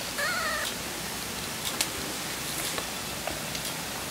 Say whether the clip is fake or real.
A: real